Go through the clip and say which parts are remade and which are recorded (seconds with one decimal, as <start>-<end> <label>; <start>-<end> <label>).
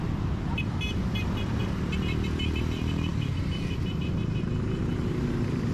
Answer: 0.0-5.7 remade